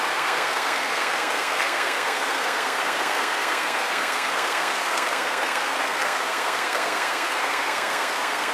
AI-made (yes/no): yes